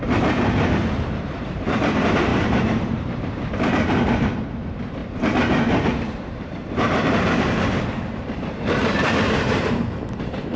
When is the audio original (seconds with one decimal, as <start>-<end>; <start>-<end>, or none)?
5.0-6.0